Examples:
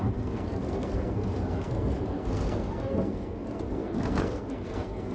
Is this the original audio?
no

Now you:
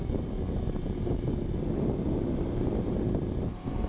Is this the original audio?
yes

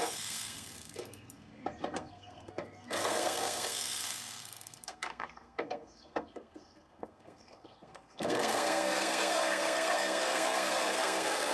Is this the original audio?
no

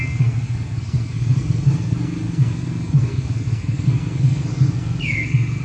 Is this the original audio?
no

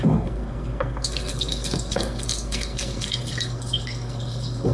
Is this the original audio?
no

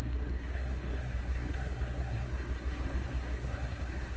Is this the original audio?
no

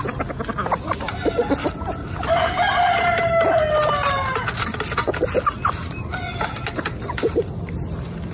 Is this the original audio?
yes